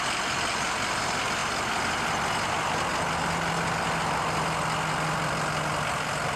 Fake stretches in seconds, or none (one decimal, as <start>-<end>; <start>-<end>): none